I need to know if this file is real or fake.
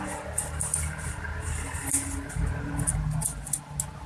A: real